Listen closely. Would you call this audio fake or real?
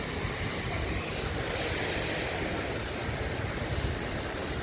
real